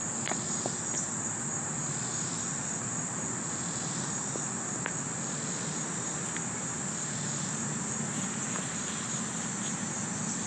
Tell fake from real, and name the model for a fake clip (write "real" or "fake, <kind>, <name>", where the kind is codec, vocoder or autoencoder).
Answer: real